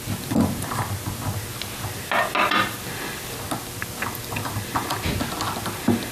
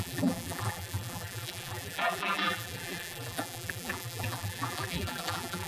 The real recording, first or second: first